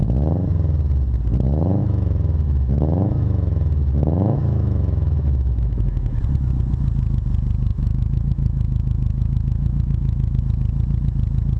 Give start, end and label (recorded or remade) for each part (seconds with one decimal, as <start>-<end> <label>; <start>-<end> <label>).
0.0-1.8 recorded; 1.8-6.2 remade; 6.2-7.7 recorded; 7.7-10.4 remade; 10.4-11.6 recorded